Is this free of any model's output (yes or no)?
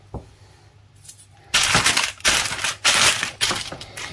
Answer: yes